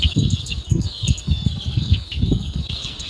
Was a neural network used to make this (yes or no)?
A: yes